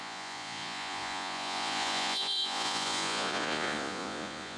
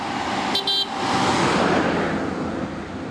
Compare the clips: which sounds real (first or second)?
second